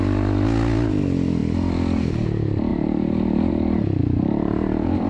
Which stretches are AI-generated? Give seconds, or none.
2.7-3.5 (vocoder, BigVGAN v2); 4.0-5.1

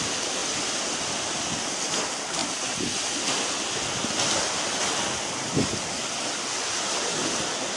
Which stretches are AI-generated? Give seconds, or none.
none

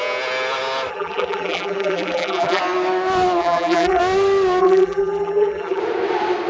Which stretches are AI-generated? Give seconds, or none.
0.9-2.6 (vocoder, BigVGAN v2); 3.4-4.0; 4.6-5.8